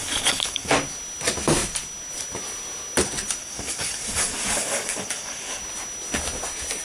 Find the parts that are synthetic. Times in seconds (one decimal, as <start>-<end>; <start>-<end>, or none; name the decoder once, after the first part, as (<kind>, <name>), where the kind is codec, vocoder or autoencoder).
0.0-0.7 (codec, DAC); 3.4-5.6